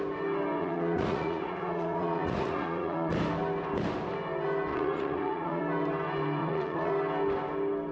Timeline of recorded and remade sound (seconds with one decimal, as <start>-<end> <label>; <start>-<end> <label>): 0.0-0.6 recorded; 0.6-3.1 remade; 3.1-4.7 recorded; 4.7-5.6 remade; 5.6-6.4 recorded; 6.4-6.9 remade; 6.9-7.9 recorded

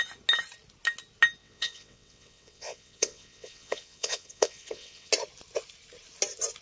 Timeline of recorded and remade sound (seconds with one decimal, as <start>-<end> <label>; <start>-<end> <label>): 0.0-1.4 recorded; 1.4-5.1 remade; 5.1-6.6 recorded

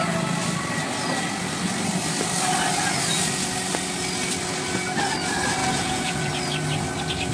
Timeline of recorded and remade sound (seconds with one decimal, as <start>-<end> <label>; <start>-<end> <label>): 0.0-5.6 recorded; 5.6-6.3 remade; 6.3-7.3 recorded

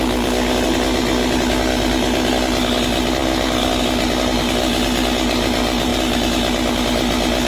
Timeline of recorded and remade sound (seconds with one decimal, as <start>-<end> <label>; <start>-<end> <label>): 0.0-7.5 recorded

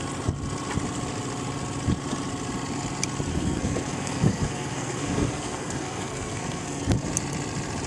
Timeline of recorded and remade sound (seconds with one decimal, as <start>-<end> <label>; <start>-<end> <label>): 0.0-3.3 recorded; 3.3-6.8 remade; 6.8-7.9 recorded

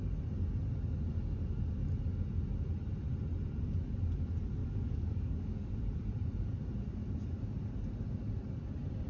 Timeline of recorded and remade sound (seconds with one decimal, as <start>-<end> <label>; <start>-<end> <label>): 0.0-4.6 recorded; 4.6-5.7 remade; 5.7-9.1 recorded

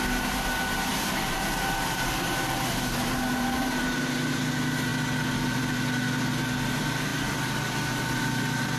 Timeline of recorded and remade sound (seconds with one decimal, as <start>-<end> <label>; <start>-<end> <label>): 0.0-0.9 recorded; 0.9-4.4 remade; 4.4-8.8 recorded